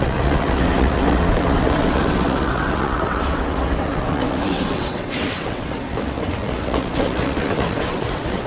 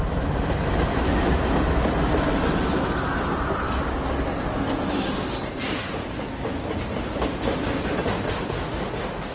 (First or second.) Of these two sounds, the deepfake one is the first